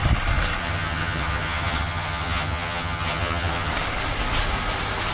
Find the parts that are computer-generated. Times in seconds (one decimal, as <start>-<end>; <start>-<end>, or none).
0.6-3.7

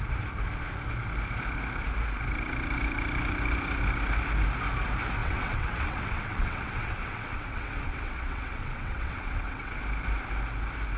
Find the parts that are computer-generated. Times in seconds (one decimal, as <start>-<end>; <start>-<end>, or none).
5.2-9.8

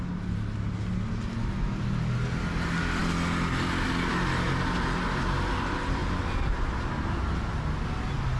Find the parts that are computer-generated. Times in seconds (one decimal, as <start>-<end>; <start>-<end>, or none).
none

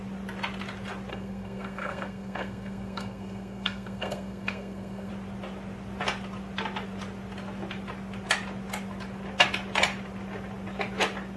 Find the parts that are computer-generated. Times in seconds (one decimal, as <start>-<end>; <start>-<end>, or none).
1.1-5.1